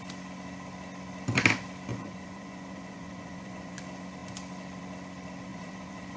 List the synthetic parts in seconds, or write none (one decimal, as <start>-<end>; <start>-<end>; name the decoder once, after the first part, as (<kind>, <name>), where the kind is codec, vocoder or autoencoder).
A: 1.9-3.8 (vocoder, Vocos); 5.5-6.2

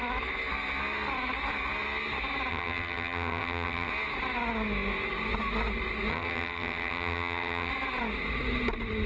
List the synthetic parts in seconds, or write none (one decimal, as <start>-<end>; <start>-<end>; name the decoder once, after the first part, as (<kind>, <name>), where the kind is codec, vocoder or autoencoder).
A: 2.5-3.9 (vocoder, HiFi-GAN); 6.1-7.7

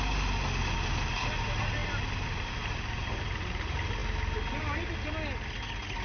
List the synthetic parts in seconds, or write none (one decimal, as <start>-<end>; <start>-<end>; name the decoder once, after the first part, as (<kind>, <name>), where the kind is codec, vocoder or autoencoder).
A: none

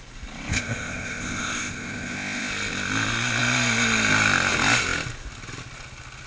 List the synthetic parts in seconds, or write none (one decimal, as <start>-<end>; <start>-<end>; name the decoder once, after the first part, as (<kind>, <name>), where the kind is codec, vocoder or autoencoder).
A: 0.5-2.5 (codec, ZipCodec)

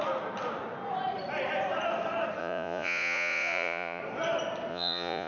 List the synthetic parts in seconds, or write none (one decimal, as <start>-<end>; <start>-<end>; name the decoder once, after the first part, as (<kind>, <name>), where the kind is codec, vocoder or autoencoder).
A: 2.4-4.0 (vocoder, Vocos); 4.7-5.3